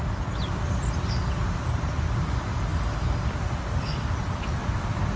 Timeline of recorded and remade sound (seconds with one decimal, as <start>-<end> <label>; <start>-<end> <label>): 0.0-5.2 recorded